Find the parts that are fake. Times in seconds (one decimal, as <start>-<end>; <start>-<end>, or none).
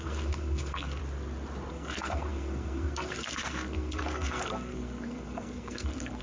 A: 0.0-1.0; 1.7-6.2